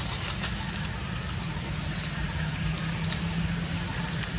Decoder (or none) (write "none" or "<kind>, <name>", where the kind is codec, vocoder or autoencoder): none